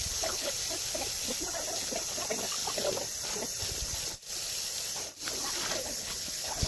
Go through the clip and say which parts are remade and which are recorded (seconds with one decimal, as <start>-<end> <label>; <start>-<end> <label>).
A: 0.0-0.5 remade; 0.5-5.8 recorded; 5.8-6.7 remade